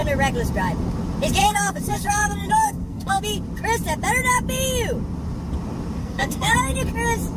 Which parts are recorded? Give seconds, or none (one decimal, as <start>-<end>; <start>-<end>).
0.0-1.4; 3.2-6.0; 6.8-7.4